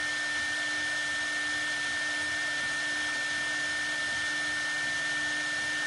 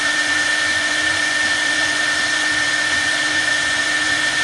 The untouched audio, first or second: first